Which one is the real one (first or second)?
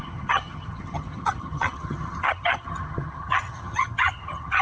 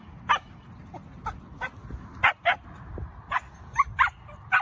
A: second